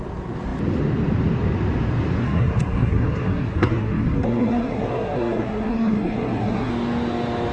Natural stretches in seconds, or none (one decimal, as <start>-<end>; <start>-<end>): 0.0-2.2; 6.7-7.5